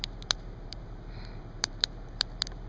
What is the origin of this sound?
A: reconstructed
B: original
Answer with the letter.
A